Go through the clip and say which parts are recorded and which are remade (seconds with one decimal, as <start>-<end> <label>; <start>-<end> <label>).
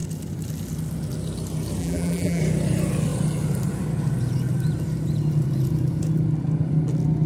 0.0-1.8 recorded; 1.8-2.4 remade; 2.4-7.3 recorded